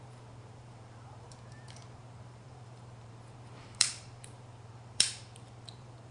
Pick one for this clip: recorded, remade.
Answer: remade